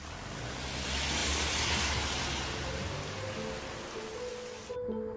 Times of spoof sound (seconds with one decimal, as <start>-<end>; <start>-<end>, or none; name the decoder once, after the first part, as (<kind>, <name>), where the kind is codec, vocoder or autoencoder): none